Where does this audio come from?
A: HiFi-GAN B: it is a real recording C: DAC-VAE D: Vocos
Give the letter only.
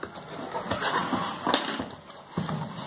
B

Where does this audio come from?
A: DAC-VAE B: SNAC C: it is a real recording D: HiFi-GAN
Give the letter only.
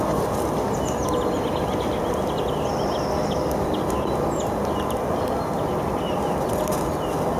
C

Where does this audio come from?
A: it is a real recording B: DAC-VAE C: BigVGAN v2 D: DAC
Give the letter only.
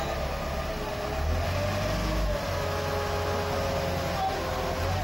A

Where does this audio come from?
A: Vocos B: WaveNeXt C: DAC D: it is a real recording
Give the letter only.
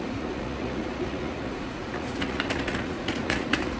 A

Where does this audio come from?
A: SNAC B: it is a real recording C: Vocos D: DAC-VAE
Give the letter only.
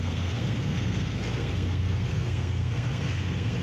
A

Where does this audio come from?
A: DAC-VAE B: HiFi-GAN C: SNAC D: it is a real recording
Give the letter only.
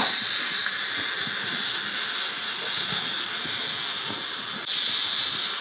D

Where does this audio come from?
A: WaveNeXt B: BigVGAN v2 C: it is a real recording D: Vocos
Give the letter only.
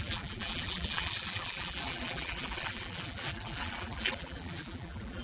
B